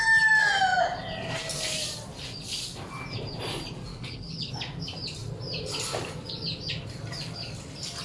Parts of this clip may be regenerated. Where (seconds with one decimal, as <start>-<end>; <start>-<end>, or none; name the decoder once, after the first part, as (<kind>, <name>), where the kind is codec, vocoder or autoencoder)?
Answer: 3.9-4.5 (codec, HILCodec)